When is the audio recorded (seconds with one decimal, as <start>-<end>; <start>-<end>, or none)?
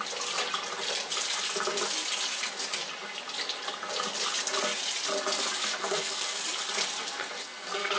0.0-5.6; 6.4-7.0